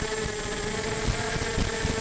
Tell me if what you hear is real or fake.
real